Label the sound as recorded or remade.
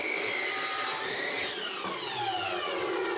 recorded